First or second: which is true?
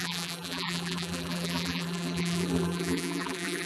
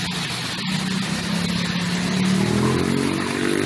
second